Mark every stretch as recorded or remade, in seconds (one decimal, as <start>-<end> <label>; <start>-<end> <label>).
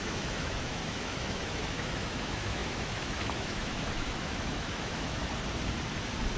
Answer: 0.0-5.2 remade; 5.2-6.4 recorded